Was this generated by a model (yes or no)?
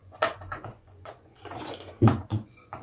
yes